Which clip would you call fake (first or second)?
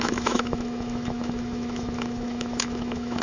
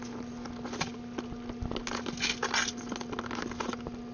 first